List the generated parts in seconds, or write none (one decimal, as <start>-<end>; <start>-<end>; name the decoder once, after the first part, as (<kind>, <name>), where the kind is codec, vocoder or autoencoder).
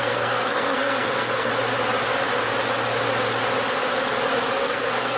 0.0-1.5 (codec, SNAC); 4.6-5.2